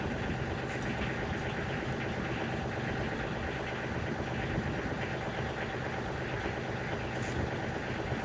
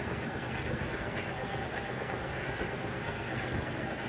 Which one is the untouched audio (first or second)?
first